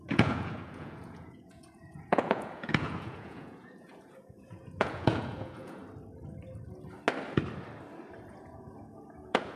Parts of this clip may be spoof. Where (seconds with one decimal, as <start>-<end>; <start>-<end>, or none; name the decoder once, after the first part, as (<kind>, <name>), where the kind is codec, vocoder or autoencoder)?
0.0-5.8 (vocoder, Vocos); 8.3-9.6